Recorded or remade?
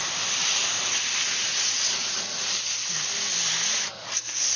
recorded